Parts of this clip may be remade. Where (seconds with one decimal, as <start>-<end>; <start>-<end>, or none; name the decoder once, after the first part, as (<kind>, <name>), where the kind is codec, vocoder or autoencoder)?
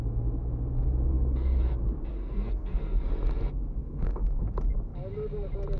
1.1-1.6 (codec, SNAC); 2.1-3.1; 3.8-4.4